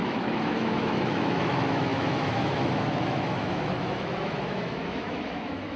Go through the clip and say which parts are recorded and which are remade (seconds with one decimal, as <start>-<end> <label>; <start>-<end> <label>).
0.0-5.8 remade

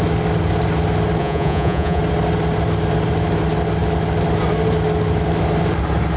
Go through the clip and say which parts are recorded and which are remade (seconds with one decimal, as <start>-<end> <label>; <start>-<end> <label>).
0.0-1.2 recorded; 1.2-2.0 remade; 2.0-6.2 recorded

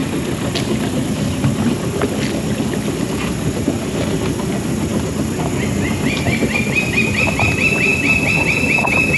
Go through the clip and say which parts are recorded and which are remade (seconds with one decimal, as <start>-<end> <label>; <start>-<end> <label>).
0.0-9.2 recorded

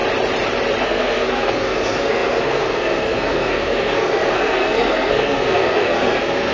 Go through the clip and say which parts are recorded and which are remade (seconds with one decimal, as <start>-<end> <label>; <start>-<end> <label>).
0.0-0.8 recorded; 0.8-6.5 remade